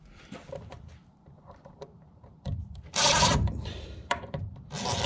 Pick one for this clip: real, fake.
fake